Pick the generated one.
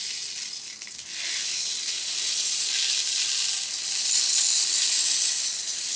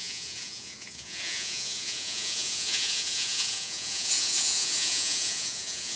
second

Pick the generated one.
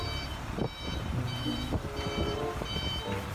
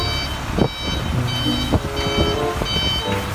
first